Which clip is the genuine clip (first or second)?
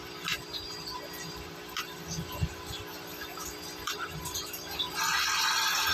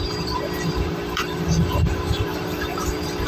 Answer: first